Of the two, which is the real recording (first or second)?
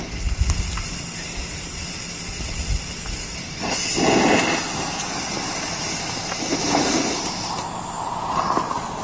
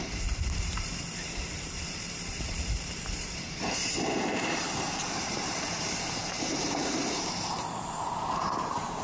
first